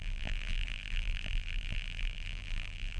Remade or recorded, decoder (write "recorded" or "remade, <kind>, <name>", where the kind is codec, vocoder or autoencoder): remade, vocoder, BigVGAN v2